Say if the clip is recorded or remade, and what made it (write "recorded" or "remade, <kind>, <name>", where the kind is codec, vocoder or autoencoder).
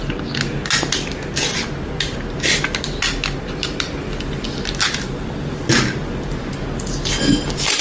recorded